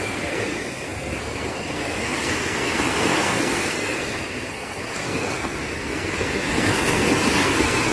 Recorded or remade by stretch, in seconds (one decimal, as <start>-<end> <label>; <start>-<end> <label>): 0.0-7.9 remade